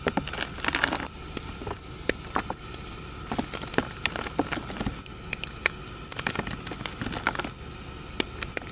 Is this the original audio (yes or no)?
yes